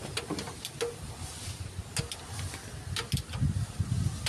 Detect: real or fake real